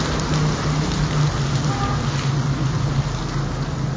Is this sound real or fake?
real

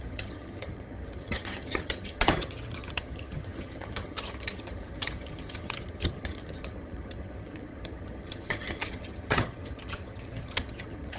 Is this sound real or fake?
fake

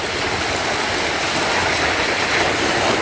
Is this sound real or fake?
real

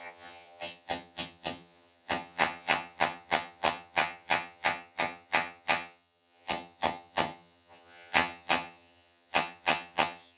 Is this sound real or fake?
fake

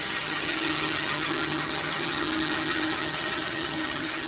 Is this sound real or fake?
fake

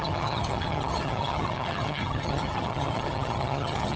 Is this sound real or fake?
fake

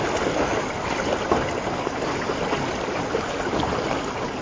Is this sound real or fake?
real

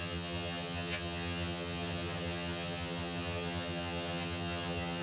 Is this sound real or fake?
fake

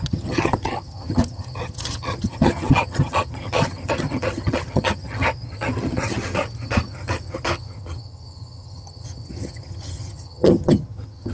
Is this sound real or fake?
fake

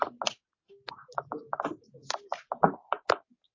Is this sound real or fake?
real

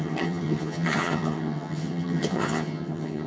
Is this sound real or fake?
fake